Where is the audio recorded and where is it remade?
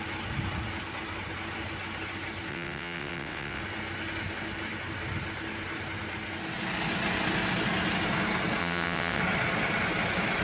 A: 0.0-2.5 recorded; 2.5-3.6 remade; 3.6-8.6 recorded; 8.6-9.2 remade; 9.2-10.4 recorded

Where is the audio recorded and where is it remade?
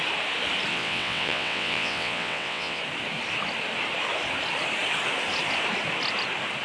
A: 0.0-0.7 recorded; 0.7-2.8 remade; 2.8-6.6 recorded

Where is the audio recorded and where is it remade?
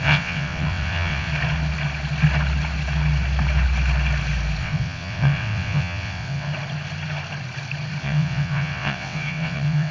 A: 0.0-1.3 remade; 1.3-4.6 recorded; 4.6-6.5 remade; 6.5-8.0 recorded; 8.0-9.9 remade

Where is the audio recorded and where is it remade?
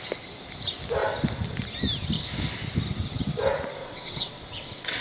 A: 0.0-3.8 recorded; 3.8-5.0 remade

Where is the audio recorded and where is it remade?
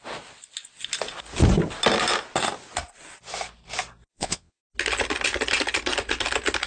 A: 0.0-4.1 recorded; 4.1-4.6 remade; 4.6-6.7 recorded